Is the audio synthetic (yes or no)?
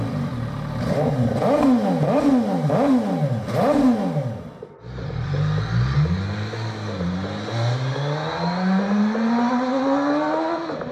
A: no